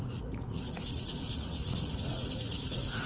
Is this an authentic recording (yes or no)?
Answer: no